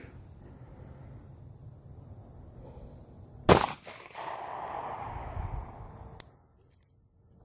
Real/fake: real